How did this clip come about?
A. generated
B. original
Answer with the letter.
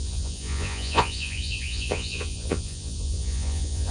A